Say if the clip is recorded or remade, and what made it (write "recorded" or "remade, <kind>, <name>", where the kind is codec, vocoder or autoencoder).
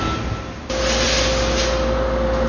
recorded